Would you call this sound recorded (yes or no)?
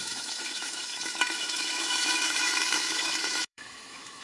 no